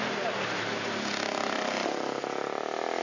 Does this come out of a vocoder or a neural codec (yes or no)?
no